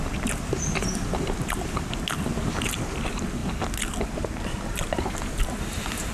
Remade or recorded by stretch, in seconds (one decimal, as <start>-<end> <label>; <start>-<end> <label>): 0.0-6.1 recorded